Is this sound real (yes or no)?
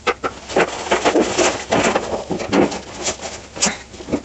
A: yes